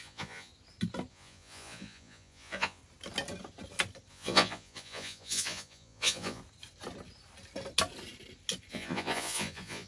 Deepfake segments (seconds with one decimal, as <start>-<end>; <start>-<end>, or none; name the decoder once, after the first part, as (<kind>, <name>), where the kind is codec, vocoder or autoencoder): 0.0-0.5 (vocoder, Vocos); 1.1-2.8; 4.1-6.4; 8.7-9.9